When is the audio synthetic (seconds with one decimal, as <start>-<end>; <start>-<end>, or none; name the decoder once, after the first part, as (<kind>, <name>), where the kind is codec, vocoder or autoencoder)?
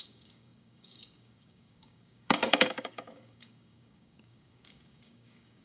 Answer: 0.0-5.6 (codec, DAC)